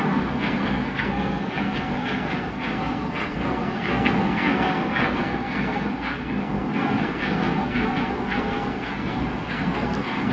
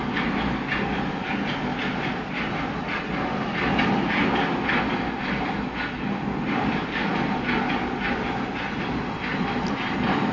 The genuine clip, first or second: second